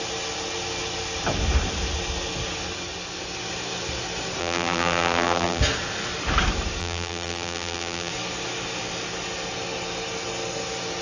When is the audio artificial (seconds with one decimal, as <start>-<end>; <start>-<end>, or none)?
4.4-5.6; 6.8-8.1